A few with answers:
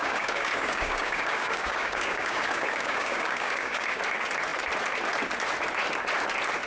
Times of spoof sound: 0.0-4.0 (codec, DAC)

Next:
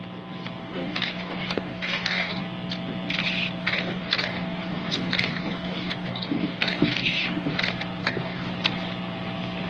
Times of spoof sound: 0.6-2.4 (codec, DAC); 3.6-7.6; 8.0-8.5

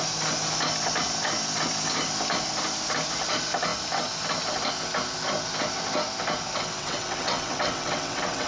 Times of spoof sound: 6.8-8.5 (vocoder, WaveNeXt)

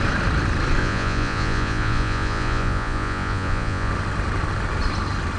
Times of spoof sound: 0.8-3.9 (vocoder, Vocos)